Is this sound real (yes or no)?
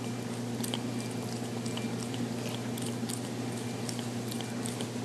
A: yes